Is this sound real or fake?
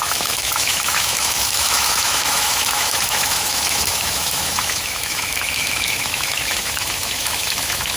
fake